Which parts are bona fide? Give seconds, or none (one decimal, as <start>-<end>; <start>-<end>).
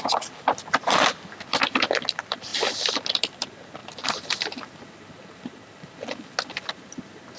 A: 0.0-7.4